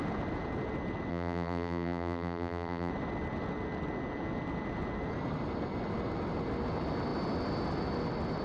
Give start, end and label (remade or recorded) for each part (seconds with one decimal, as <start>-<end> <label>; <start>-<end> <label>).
0.0-1.1 recorded; 1.1-2.9 remade; 2.9-8.4 recorded